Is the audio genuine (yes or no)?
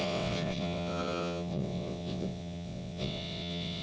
no